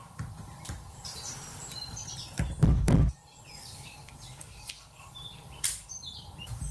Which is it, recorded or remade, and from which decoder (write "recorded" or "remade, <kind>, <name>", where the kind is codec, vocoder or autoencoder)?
remade, vocoder, BigVGAN v2